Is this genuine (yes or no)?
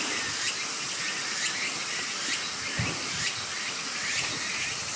yes